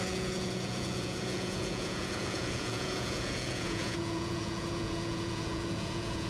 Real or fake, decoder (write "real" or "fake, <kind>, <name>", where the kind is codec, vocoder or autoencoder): fake, vocoder, Vocos